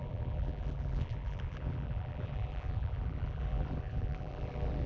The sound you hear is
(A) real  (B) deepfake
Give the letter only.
B